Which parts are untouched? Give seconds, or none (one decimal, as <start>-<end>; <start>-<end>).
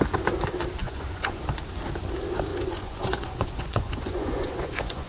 0.0-0.8; 1.4-2.5